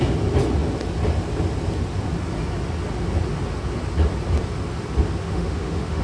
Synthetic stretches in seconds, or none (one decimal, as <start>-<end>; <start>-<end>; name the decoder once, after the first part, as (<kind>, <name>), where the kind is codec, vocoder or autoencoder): 5.2-6.0 (autoencoder, DAC-VAE)